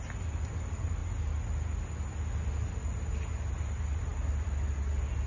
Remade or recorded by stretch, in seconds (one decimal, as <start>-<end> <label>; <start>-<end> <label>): 0.0-1.0 remade; 1.0-3.5 recorded; 3.5-4.1 remade; 4.1-5.3 recorded